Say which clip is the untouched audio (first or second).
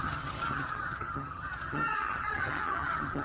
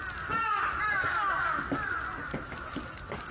second